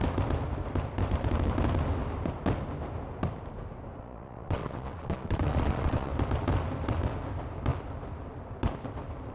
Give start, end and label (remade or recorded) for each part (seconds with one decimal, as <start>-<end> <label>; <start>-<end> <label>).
0.0-4.0 recorded; 4.0-6.1 remade; 6.1-9.3 recorded